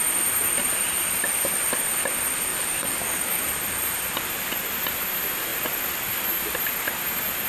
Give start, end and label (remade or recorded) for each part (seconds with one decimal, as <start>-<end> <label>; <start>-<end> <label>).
0.0-2.5 recorded; 2.5-3.4 remade; 3.4-7.5 recorded